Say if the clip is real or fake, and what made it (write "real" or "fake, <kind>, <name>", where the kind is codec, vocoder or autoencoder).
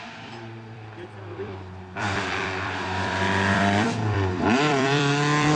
fake, vocoder, BigVGAN v2